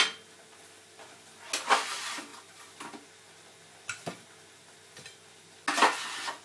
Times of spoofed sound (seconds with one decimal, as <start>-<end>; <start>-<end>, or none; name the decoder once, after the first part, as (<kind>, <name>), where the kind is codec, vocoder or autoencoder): none